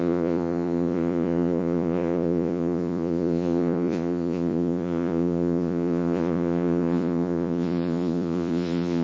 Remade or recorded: remade